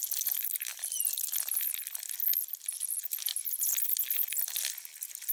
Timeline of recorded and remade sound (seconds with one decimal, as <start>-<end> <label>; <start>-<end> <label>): 0.0-5.3 recorded